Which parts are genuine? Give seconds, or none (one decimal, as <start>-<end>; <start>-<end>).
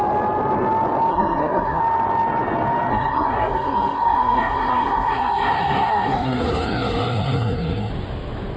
0.0-1.1; 1.8-2.9; 7.9-8.6